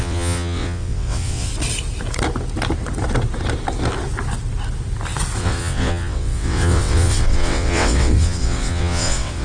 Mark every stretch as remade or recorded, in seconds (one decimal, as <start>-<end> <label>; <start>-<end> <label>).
0.0-1.5 remade; 1.5-5.4 recorded; 5.4-9.4 remade